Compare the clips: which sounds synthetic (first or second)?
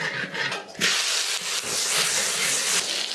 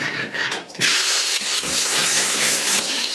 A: second